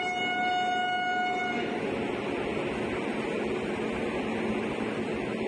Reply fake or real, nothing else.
real